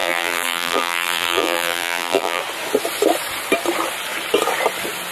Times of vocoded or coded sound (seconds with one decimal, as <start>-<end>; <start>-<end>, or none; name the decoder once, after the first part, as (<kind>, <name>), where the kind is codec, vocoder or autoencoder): 0.0-2.4 (vocoder, BigVGAN v2)